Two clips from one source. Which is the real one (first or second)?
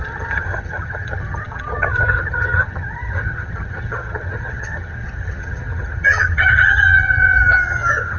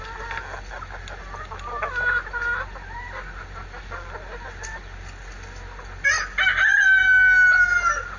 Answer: second